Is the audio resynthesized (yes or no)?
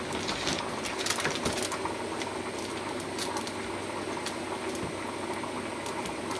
no